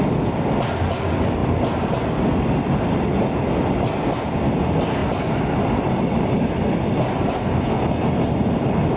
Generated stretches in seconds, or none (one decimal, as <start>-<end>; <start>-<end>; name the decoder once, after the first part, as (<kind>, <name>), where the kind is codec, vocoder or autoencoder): none